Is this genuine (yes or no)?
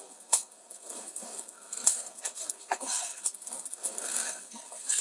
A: no